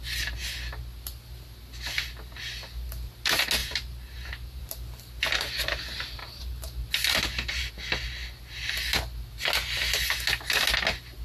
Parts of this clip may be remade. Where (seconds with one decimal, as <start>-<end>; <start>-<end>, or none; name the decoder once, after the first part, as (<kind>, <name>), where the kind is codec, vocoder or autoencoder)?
3.6-4.6 (vocoder, BigVGAN v2); 6.2-7.7